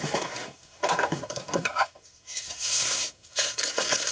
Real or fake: fake